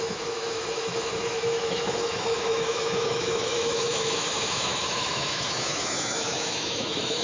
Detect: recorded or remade remade